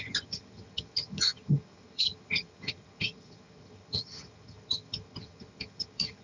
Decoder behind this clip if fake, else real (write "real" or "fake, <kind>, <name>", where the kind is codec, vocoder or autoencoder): fake, vocoder, HiFi-GAN